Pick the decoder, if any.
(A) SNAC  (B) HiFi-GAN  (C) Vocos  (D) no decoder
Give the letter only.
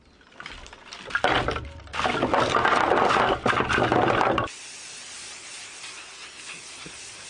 D